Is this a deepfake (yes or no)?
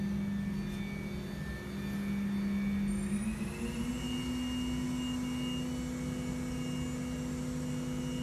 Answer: no